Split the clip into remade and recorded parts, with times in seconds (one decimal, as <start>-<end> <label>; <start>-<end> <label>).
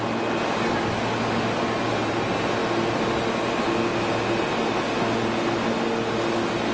0.0-6.7 recorded